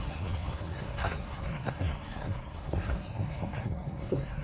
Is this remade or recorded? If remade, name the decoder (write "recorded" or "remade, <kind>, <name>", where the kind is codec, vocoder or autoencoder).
remade, codec, SNAC